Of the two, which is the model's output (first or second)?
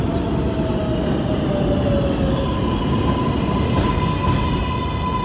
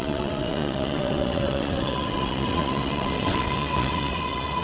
second